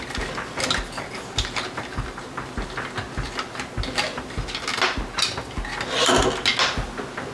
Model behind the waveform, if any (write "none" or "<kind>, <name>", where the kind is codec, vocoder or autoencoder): none